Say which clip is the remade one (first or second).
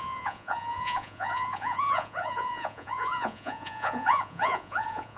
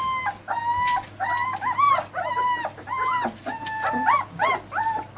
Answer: first